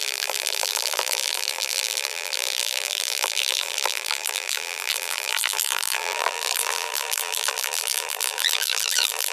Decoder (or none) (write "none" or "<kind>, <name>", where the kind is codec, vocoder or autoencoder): vocoder, BigVGAN v2